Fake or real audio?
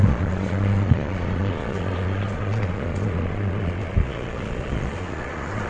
fake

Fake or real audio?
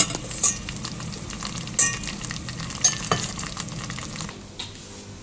real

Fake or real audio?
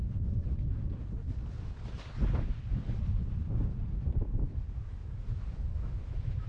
real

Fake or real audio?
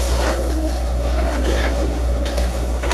fake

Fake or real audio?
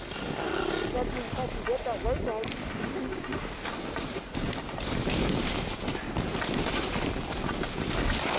real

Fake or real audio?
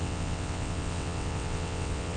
fake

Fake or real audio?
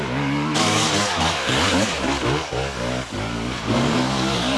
fake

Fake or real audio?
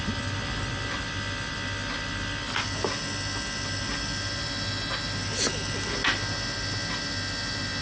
real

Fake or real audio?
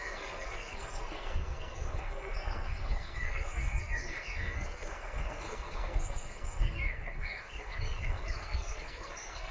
fake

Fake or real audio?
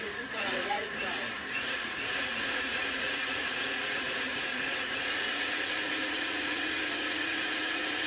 fake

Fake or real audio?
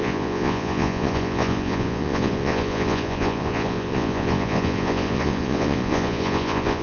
fake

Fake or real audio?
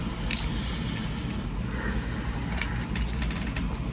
real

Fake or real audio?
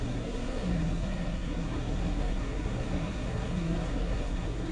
fake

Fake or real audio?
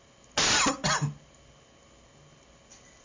real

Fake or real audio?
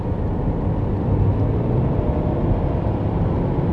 real